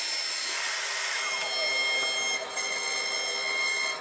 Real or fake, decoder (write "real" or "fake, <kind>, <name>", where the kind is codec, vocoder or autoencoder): real